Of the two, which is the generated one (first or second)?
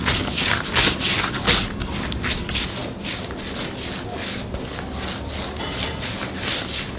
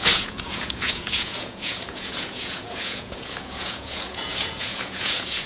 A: second